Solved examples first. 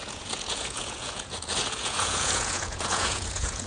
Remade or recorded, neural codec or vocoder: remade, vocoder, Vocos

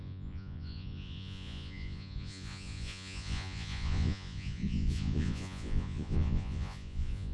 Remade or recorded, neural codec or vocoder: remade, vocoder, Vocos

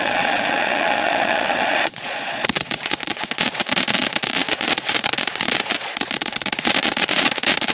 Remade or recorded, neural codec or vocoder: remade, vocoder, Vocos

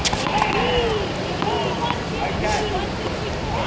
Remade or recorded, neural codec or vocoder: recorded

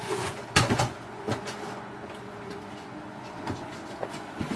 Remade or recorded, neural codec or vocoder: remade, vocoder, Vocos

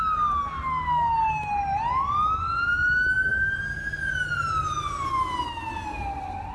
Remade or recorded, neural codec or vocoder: recorded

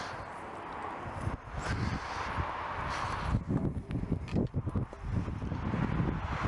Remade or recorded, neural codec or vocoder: recorded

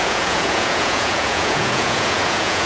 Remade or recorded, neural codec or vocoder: remade, vocoder, Vocos